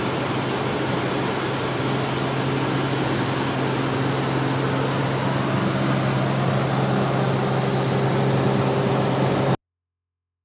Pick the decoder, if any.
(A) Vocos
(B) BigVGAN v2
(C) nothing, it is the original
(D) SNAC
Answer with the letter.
C